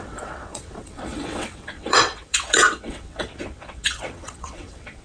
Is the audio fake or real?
fake